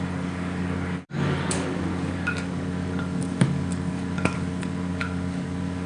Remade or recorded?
remade